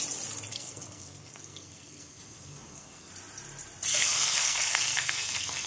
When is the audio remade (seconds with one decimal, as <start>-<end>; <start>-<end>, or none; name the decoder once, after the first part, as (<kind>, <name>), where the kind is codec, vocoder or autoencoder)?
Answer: 0.5-3.1 (codec, SNAC); 3.9-5.7